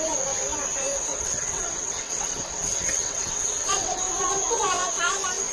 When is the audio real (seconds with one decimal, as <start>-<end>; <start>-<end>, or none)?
0.0-1.1; 4.0-5.5